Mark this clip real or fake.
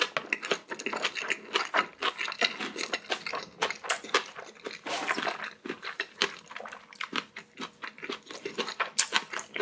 real